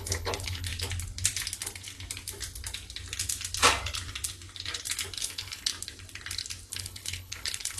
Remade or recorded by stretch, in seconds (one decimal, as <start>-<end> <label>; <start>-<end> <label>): 0.0-0.7 remade; 0.7-5.2 recorded; 5.2-5.7 remade; 5.7-6.7 recorded; 6.7-7.8 remade